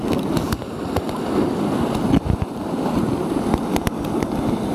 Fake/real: real